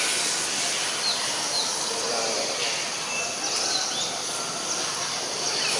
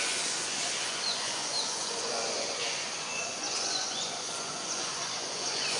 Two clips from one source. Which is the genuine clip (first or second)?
first